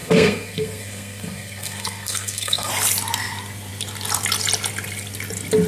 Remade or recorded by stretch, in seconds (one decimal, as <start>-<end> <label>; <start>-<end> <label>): 0.0-2.7 remade; 2.7-5.7 recorded